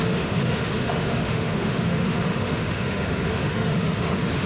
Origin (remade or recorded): remade